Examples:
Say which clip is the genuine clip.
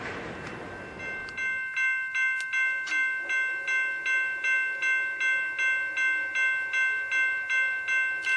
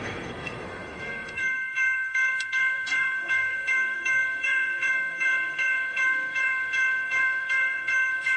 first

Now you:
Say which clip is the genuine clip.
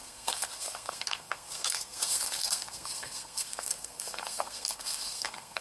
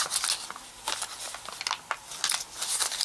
second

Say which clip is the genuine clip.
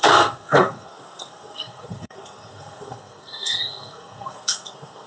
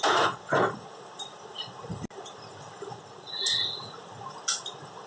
second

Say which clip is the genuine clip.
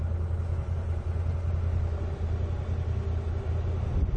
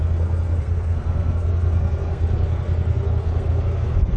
first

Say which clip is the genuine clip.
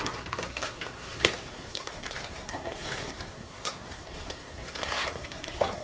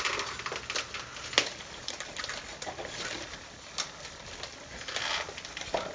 second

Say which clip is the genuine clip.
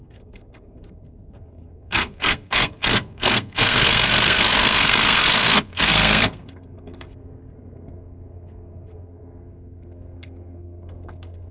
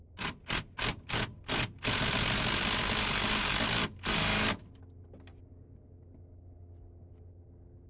second